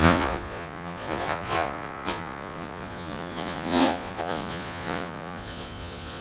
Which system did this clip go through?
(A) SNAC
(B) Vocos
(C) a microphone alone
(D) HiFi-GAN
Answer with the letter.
B